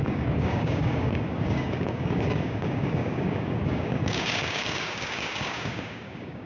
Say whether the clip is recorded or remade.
remade